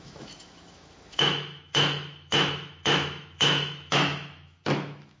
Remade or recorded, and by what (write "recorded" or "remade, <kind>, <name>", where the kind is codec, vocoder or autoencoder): remade, autoencoder, DAC-VAE